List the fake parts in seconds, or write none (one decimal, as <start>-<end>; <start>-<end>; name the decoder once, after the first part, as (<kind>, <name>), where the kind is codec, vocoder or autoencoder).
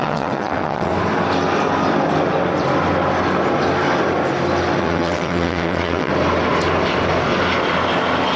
0.0-0.9 (vocoder, WaveNeXt); 4.8-6.1